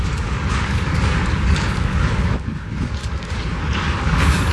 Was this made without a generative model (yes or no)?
no